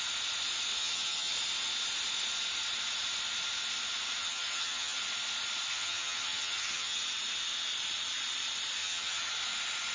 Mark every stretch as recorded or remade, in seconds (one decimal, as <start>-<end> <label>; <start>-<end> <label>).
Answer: 0.0-0.8 recorded; 0.8-1.3 remade; 1.3-4.2 recorded; 4.2-5.0 remade; 5.0-5.7 recorded; 5.7-7.0 remade; 7.0-8.8 recorded; 8.8-9.3 remade; 9.3-9.9 recorded